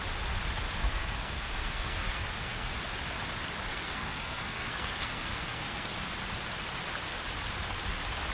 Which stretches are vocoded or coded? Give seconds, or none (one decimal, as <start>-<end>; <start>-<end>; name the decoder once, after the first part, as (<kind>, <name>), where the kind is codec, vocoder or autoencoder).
0.8-2.7 (codec, SNAC); 3.7-5.9